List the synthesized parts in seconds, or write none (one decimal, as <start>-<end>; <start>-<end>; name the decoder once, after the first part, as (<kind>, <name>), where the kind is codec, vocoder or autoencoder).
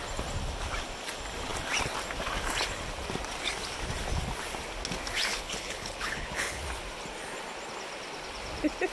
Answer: 5.3-6.6 (codec, HILCodec)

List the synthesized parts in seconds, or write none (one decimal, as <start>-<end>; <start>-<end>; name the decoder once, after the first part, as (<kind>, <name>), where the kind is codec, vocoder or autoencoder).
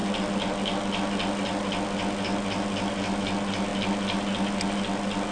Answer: none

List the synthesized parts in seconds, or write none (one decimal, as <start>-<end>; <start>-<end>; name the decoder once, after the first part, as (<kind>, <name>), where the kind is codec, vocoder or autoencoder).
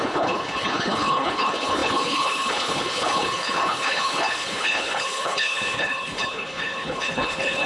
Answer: 0.0-7.7 (codec, HILCodec)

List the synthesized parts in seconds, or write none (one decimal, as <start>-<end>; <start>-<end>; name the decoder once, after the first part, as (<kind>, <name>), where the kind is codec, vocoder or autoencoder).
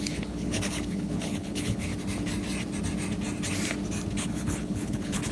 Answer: 0.0-1.9 (codec, HILCodec); 4.1-5.3